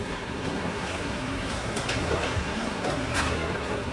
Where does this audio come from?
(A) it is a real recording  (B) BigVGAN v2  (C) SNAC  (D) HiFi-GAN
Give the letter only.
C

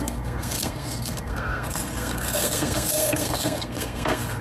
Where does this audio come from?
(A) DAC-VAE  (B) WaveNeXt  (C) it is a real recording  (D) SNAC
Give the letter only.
D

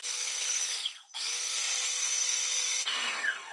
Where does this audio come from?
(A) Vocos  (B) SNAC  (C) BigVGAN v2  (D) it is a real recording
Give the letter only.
B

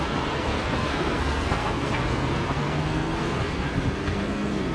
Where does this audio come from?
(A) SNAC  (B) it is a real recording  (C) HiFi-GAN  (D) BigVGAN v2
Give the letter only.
A